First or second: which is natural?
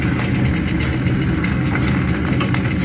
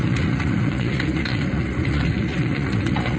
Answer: first